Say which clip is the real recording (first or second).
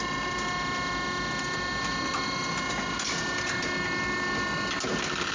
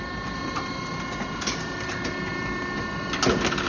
first